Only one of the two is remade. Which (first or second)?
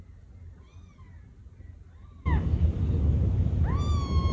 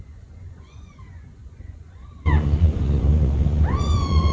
second